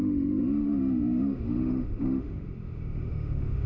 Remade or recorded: remade